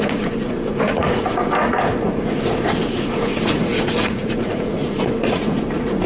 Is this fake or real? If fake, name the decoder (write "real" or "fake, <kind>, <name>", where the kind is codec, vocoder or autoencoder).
fake, vocoder, Vocos